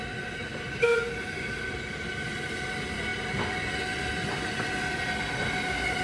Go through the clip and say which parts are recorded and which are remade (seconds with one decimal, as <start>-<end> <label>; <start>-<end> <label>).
0.0-6.0 recorded